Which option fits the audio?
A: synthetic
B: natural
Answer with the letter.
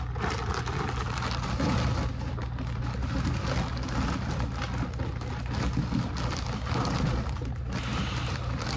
B